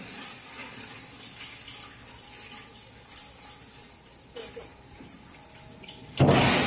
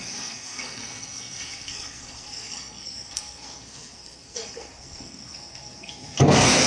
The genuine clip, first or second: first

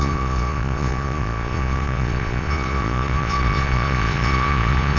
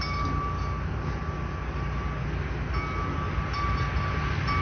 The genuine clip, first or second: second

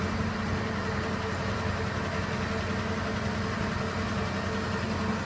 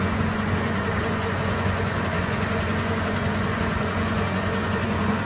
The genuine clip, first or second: first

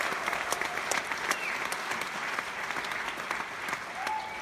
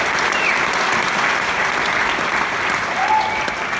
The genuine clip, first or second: first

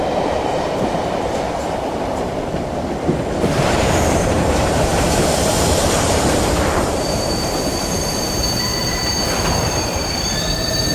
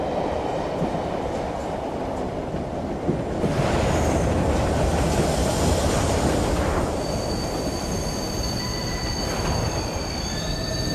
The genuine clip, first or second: second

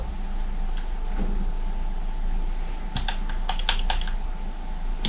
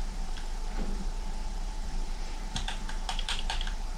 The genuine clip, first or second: first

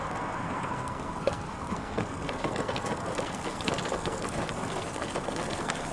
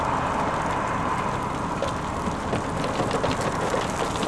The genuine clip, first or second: second